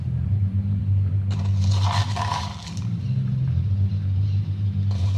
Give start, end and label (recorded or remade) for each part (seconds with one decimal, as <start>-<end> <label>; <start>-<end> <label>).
0.0-0.8 remade; 0.8-3.9 recorded; 3.9-5.2 remade